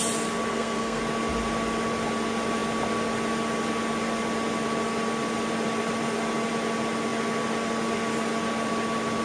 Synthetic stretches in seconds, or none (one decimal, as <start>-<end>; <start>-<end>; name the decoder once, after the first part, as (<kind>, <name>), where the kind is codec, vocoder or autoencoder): 0.5-1.0 (codec, SNAC)